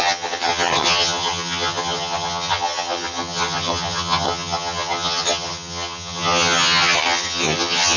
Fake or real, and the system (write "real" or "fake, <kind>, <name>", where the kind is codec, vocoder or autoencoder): fake, vocoder, HiFi-GAN